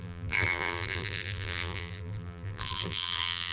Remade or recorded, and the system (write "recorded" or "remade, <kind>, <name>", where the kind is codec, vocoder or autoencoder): remade, vocoder, BigVGAN v2